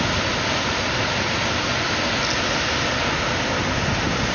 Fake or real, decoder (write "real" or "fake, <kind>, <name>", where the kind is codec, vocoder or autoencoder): real